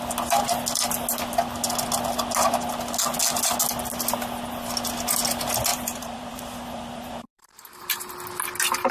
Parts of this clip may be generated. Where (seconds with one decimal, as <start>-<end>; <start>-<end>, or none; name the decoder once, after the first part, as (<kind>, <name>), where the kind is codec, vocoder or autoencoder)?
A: 5.7-8.1 (vocoder, BigVGAN v2)